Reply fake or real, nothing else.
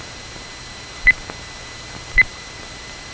fake